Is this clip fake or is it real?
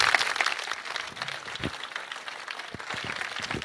real